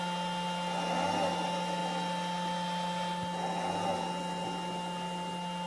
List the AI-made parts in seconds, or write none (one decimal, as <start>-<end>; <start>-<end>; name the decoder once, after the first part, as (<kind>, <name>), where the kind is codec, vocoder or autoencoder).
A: none